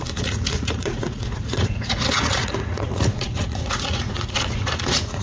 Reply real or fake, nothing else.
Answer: fake